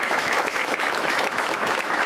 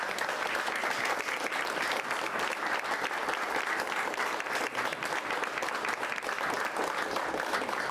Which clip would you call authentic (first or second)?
second